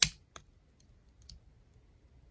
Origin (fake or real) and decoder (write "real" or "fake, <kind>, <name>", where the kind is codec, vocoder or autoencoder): real